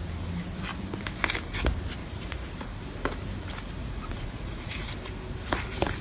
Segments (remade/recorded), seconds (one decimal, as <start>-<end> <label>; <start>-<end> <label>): 0.0-2.0 recorded; 2.0-2.5 remade; 2.5-3.8 recorded; 3.8-4.9 remade; 4.9-6.0 recorded

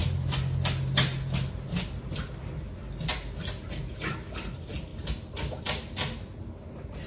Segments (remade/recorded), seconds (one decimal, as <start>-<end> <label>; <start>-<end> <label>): 0.0-7.1 recorded

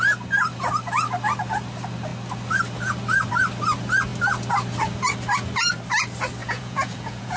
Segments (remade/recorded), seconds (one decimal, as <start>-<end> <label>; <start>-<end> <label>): 0.0-6.4 recorded; 6.4-7.4 remade

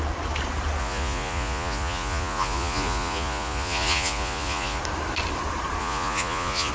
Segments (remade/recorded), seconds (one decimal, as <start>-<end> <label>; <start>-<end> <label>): 0.0-0.8 recorded; 0.8-4.8 remade; 4.8-5.8 recorded; 5.8-6.7 remade

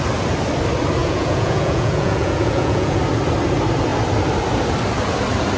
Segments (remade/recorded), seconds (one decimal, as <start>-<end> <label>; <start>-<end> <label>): 0.0-1.0 recorded; 1.0-3.0 remade; 3.0-5.6 recorded

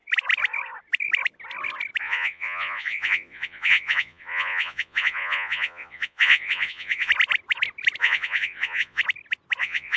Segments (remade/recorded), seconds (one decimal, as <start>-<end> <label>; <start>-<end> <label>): 0.0-2.0 recorded; 2.0-7.1 remade; 7.1-8.0 recorded; 8.0-9.0 remade; 9.0-9.6 recorded; 9.6-10.0 remade

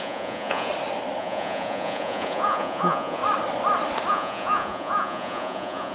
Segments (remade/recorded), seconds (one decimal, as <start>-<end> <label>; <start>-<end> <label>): 0.0-0.7 remade; 0.7-1.2 recorded; 1.2-3.2 remade; 3.2-4.1 recorded; 4.1-5.9 remade